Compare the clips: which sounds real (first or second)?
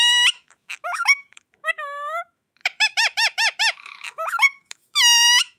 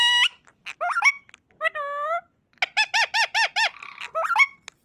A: second